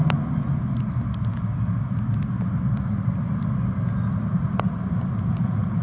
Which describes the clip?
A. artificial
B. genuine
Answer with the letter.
B